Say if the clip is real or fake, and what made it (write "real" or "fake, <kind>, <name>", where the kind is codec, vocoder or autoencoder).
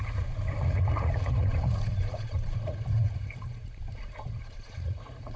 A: fake, vocoder, Vocos